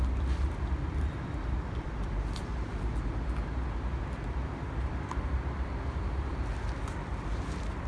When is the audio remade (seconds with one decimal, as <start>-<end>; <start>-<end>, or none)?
0.0-2.5; 4.0-7.9